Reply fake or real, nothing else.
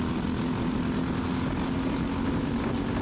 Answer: real